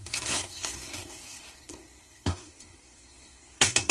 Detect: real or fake fake